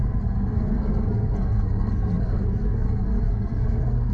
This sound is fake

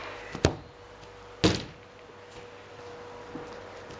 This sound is real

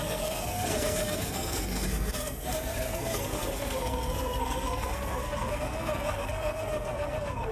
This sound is fake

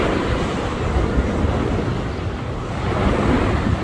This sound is real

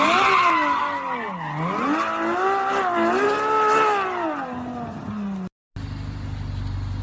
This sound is real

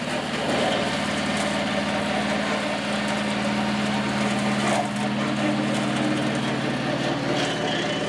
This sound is real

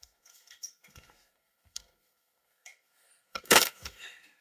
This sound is fake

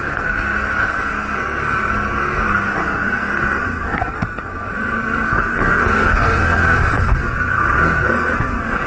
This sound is fake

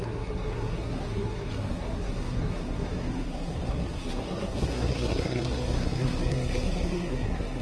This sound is fake